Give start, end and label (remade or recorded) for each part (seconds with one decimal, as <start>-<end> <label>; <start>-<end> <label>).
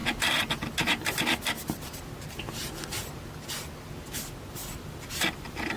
0.0-4.6 recorded; 4.6-5.8 remade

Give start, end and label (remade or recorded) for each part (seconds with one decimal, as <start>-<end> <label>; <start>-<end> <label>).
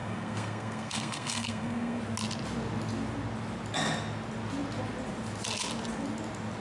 0.0-2.0 remade; 2.0-6.6 recorded